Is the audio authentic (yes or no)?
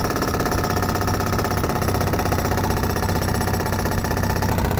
yes